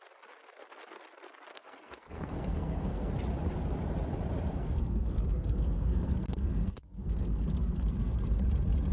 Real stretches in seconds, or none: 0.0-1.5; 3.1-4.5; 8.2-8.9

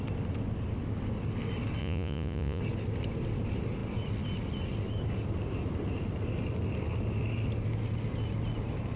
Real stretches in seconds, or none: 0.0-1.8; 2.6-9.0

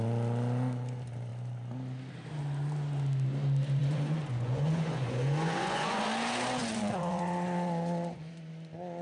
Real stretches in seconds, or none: 0.0-3.8; 6.0-6.6; 8.3-9.0

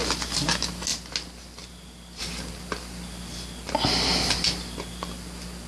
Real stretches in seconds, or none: 0.0-5.7